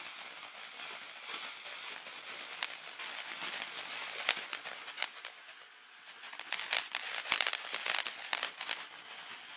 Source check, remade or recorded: recorded